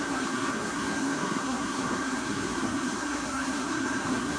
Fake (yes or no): yes